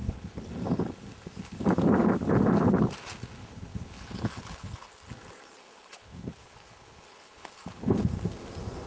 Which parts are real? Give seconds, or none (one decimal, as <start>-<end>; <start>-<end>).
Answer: 0.5-3.4; 4.9-5.6; 8.0-8.9